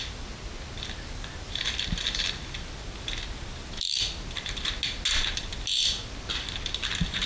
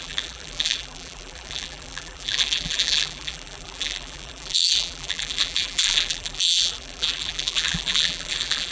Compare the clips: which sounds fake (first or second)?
second